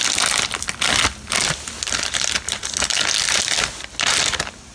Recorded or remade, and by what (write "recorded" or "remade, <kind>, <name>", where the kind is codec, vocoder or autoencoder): recorded